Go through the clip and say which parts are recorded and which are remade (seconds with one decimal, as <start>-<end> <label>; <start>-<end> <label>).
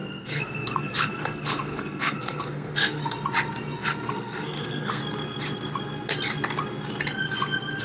0.0-3.0 remade; 3.0-4.1 recorded; 4.1-5.0 remade; 5.0-7.8 recorded